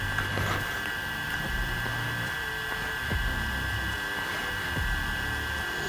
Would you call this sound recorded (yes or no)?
no